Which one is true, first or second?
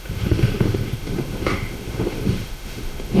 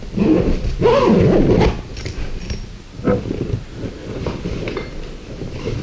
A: second